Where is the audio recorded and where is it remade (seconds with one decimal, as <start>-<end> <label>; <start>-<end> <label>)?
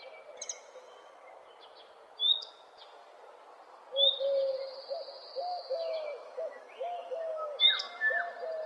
0.0-5.5 recorded; 5.5-7.6 remade; 7.6-8.7 recorded